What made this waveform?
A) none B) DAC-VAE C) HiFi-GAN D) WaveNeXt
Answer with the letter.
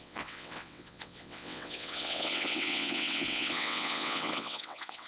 D